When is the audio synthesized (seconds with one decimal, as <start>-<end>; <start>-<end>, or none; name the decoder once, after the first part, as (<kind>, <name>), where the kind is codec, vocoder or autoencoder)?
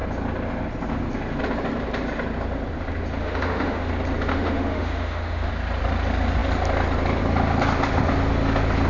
3.2-3.9 (autoencoder, DAC-VAE); 4.3-5.5